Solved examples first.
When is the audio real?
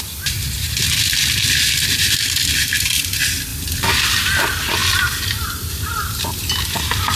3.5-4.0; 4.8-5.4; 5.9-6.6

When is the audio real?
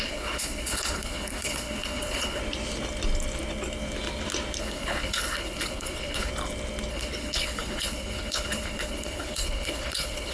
2.4-4.6; 6.3-6.9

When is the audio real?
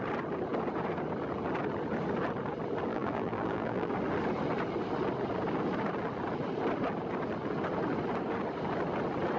0.0-2.9; 3.9-9.4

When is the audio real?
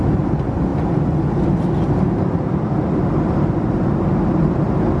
0.0-5.0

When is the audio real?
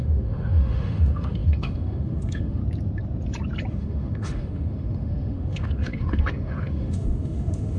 2.6-3.7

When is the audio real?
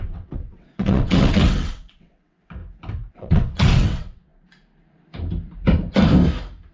2.6-3.1; 4.3-6.7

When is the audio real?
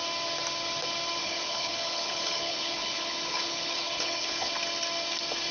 0.0-1.2; 4.5-5.5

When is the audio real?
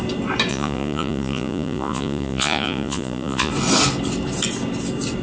0.0-0.5; 3.5-5.2